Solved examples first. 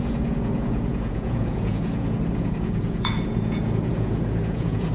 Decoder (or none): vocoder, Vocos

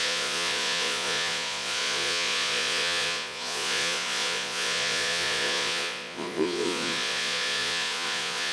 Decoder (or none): vocoder, Vocos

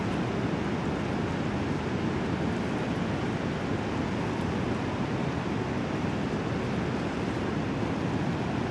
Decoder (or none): none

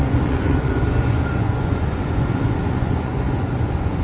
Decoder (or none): vocoder, Vocos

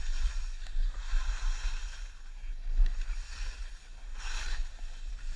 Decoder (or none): none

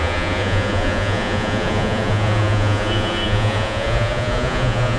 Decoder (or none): vocoder, Vocos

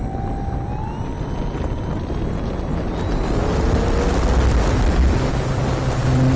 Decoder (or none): none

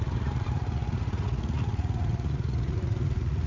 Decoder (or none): vocoder, Vocos